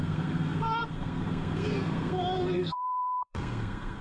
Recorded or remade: remade